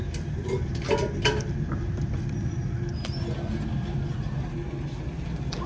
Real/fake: real